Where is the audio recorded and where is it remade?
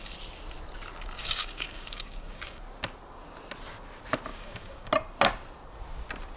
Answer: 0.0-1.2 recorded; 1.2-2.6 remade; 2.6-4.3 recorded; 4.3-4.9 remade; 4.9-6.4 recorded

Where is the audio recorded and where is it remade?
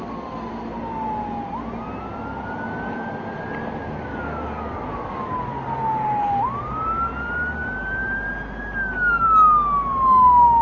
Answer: 0.0-4.1 recorded; 4.1-5.3 remade; 5.3-10.6 recorded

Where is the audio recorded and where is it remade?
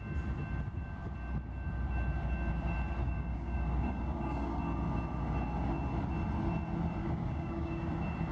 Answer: 0.0-3.0 recorded; 3.0-4.6 remade; 4.6-7.0 recorded; 7.0-7.9 remade; 7.9-8.3 recorded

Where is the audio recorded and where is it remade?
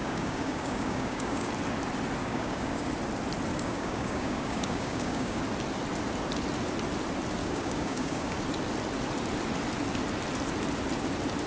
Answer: 0.0-1.5 remade; 1.5-2.2 recorded; 2.2-2.9 remade; 2.9-3.5 recorded; 3.5-5.4 remade; 5.4-7.4 recorded; 7.4-8.4 remade; 8.4-11.5 recorded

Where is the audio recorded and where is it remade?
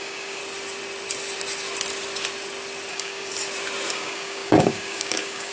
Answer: 0.0-0.4 remade; 0.4-2.9 recorded; 2.9-3.3 remade; 3.3-3.9 recorded; 3.9-5.5 remade